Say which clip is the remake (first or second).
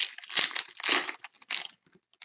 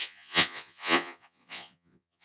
second